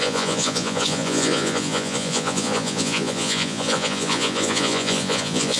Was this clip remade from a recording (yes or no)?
yes